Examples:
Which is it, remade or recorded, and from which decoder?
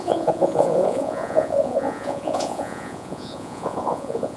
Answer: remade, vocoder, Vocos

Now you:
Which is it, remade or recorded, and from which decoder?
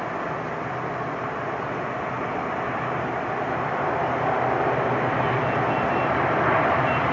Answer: recorded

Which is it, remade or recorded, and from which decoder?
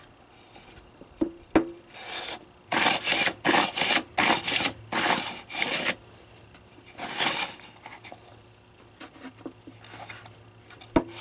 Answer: recorded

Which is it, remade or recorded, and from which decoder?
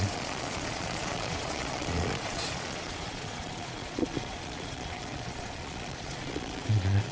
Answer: remade, vocoder, Vocos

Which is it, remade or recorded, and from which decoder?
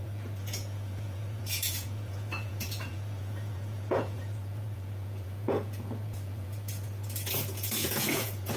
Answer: remade, vocoder, Vocos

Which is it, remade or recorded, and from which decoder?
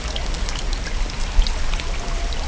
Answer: recorded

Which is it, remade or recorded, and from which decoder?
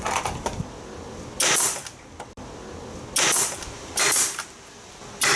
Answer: recorded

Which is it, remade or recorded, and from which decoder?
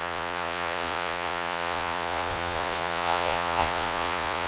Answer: remade, vocoder, Vocos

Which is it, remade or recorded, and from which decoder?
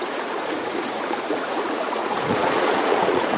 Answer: remade, vocoder, Vocos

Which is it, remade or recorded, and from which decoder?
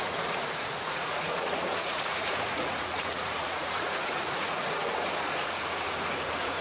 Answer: remade, vocoder, Vocos